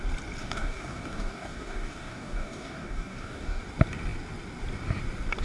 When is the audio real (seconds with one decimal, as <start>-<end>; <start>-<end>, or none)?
0.0-0.4; 3.6-5.4